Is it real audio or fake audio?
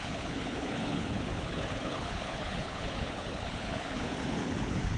fake